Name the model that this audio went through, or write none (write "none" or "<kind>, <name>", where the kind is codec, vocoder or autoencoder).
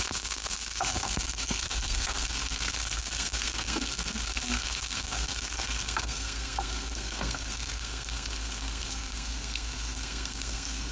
codec, SNAC